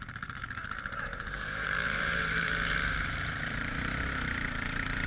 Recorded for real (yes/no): no